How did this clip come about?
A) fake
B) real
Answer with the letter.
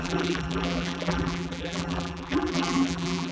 A